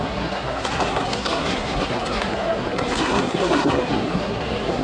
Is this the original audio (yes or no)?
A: no